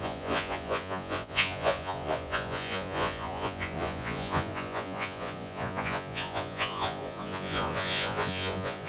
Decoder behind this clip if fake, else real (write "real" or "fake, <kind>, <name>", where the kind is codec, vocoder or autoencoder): fake, vocoder, Vocos